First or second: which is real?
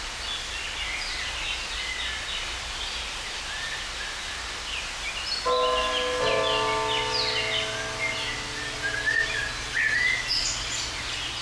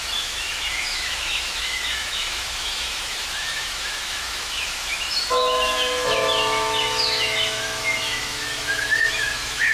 first